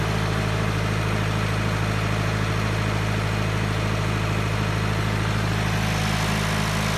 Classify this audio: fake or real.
real